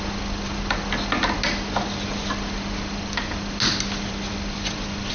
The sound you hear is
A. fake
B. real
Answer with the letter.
B